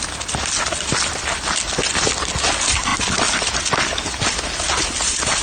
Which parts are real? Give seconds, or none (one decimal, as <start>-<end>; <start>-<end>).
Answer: 0.0-5.4